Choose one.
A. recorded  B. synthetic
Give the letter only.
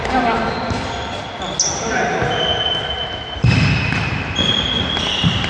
A